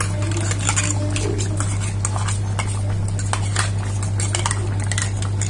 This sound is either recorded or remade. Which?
recorded